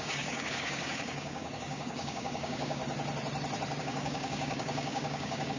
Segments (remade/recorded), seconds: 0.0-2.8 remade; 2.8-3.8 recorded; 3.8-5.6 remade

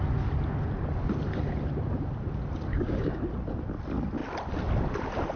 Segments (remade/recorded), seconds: 0.0-2.7 recorded; 2.7-3.2 remade; 3.2-5.4 recorded

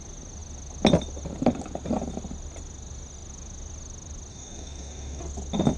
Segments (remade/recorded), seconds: 0.0-4.3 recorded; 4.3-5.2 remade; 5.2-5.8 recorded

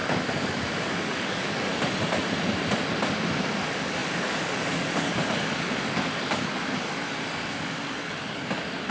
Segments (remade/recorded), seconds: 0.0-1.7 remade; 1.7-3.5 recorded; 3.5-8.9 remade

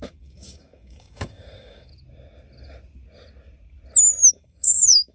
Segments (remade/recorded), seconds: 0.0-1.9 remade; 1.9-4.3 recorded; 4.3-5.1 remade

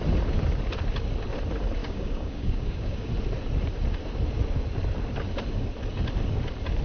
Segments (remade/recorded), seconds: 0.0-1.8 recorded; 1.8-3.1 remade; 3.1-6.8 recorded